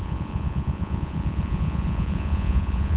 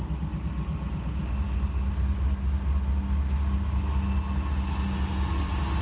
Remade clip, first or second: first